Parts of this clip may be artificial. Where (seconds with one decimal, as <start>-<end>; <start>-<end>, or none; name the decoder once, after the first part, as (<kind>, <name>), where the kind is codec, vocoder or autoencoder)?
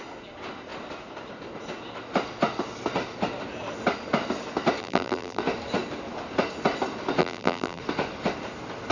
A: 4.8-5.4 (vocoder, BigVGAN v2); 7.2-7.8